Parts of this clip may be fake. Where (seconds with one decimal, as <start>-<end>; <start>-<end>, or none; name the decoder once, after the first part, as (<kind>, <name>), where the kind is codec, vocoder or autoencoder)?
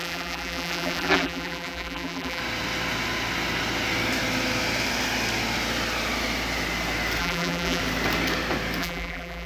0.0-2.4 (vocoder, BigVGAN v2); 7.2-7.8; 8.8-9.5